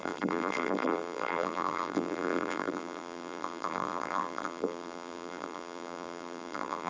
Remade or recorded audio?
remade